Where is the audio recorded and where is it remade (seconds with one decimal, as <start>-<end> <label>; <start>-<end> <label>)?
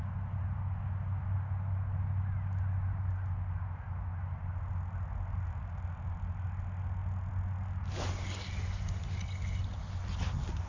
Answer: 0.0-10.7 recorded